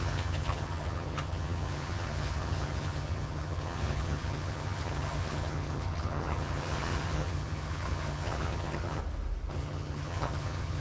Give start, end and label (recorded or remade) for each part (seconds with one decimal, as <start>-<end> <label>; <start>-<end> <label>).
0.0-9.0 remade; 9.0-9.5 recorded; 9.5-10.8 remade